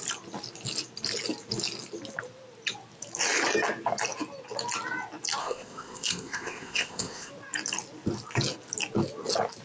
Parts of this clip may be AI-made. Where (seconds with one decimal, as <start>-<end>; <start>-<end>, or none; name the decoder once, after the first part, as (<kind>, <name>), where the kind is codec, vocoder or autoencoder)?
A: 5.4-7.3 (codec, ZipCodec)